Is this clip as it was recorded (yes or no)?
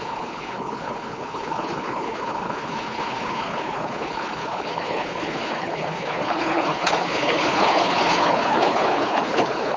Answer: no